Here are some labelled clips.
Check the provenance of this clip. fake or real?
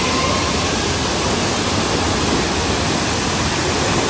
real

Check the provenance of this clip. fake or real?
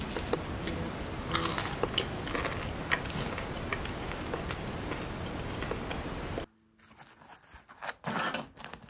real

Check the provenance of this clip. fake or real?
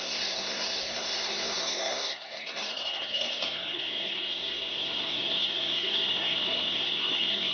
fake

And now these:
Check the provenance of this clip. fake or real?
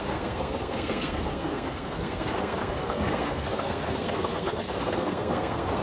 fake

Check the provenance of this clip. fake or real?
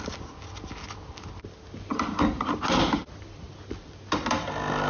real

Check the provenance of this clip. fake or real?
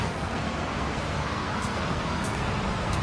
fake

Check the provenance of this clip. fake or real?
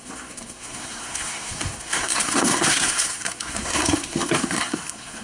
fake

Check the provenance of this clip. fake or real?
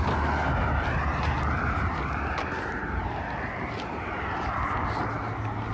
real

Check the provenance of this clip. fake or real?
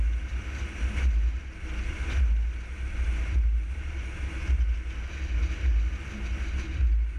real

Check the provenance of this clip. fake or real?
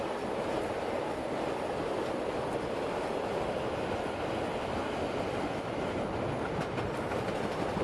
real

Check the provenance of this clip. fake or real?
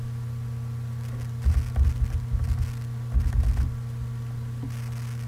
real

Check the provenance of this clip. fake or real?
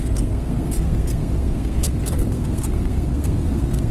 fake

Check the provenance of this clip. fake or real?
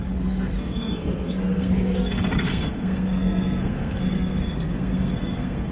fake